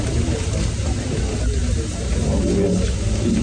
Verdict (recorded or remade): recorded